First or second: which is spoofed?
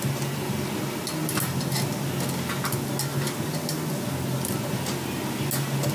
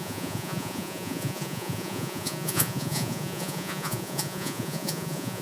second